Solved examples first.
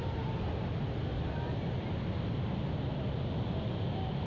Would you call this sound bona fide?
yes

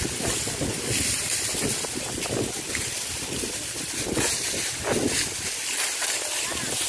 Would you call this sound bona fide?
yes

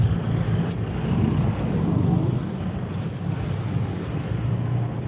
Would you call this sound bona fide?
yes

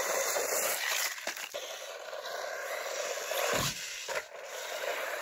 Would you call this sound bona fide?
yes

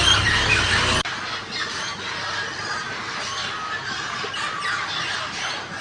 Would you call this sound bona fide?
yes